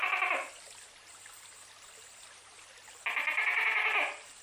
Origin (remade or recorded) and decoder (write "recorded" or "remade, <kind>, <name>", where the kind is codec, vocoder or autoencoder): recorded